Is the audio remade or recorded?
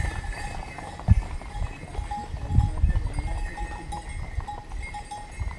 recorded